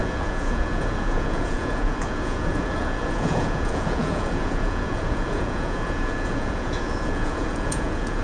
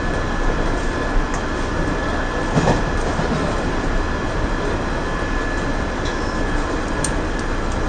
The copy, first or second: first